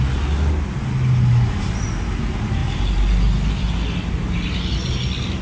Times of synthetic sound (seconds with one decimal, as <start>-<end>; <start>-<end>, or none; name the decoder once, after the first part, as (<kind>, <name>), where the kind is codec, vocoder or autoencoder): none